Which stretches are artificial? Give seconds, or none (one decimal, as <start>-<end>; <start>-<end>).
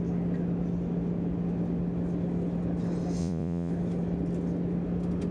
3.2-3.7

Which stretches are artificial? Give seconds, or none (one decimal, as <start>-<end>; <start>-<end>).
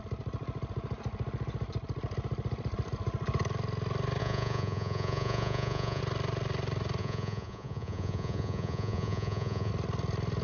4.2-6.0; 7.0-9.7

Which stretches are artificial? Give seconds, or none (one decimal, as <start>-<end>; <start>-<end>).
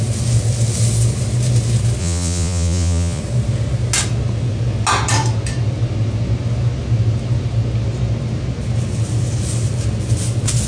2.0-3.2